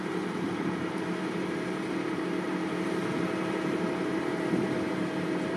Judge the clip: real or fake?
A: fake